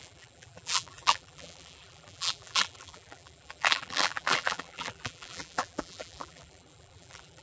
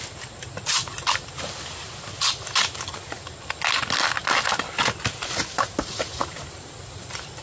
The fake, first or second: first